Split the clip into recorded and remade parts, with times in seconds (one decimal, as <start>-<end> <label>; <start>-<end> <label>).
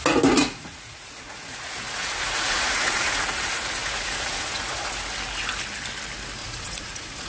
0.0-0.5 recorded; 0.5-4.9 remade; 4.9-6.4 recorded; 6.4-7.3 remade